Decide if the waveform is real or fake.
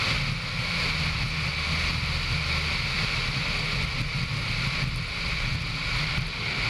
real